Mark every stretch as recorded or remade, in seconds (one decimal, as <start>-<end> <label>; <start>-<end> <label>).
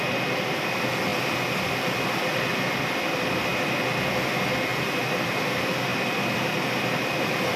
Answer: 0.0-4.7 recorded; 4.7-5.3 remade; 5.3-5.9 recorded; 5.9-7.6 remade